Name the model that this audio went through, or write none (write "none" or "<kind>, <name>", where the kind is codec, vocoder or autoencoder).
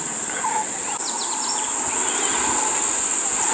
none